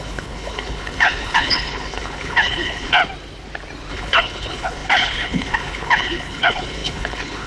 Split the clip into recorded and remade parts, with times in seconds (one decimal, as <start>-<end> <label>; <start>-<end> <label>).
0.0-3.0 remade; 3.0-3.9 recorded; 3.9-7.5 remade